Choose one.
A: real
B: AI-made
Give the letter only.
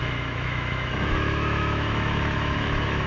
B